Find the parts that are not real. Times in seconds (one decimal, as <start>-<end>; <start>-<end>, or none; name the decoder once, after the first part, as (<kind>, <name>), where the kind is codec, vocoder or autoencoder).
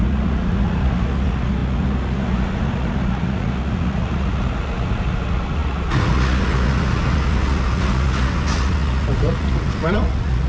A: 0.0-10.5 (vocoder, Vocos)